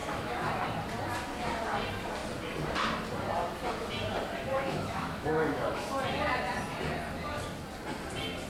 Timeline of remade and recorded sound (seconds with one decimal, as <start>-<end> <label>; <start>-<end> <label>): 0.0-0.5 remade; 0.5-4.5 recorded; 4.5-5.9 remade; 5.9-8.5 recorded